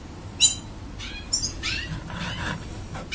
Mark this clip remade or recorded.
recorded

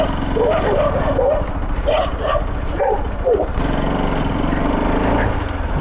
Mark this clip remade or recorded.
recorded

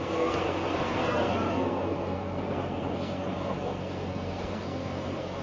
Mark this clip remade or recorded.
remade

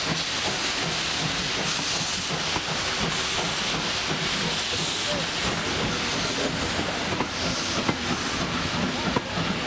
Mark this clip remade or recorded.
recorded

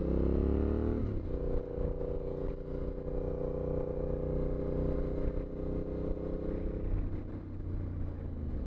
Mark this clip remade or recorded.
recorded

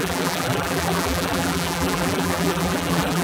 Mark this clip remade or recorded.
remade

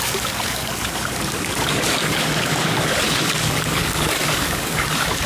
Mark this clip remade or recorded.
remade